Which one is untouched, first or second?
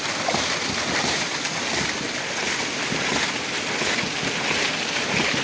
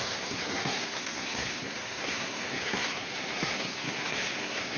first